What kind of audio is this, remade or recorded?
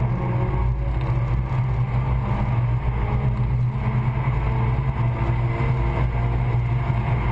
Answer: recorded